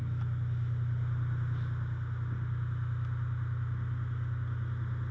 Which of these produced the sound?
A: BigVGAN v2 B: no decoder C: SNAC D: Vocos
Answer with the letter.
B